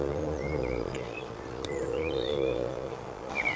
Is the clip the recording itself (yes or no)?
no